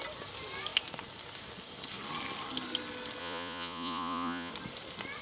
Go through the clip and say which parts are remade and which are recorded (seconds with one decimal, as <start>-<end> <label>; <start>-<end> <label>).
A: 0.0-3.2 recorded; 3.2-4.5 remade; 4.5-5.2 recorded